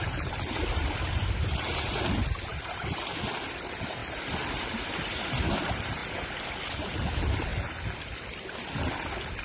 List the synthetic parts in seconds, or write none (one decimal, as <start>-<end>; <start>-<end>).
0.0-6.0; 6.6-7.5